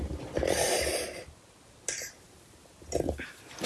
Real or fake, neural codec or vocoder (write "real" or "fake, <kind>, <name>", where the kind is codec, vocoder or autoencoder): real